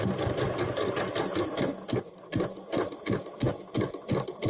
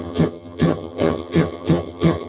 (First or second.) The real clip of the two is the first